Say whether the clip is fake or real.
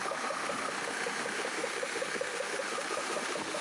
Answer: fake